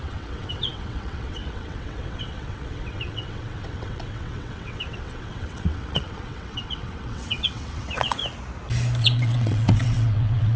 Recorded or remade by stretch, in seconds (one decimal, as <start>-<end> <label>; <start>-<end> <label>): 0.0-8.2 remade; 8.2-9.0 recorded; 9.0-10.6 remade